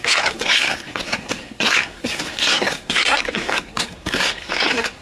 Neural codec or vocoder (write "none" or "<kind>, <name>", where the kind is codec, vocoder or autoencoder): codec, SNAC